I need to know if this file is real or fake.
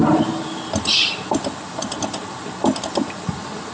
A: real